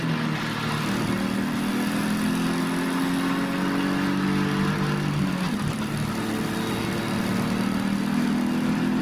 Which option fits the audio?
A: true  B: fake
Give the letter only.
A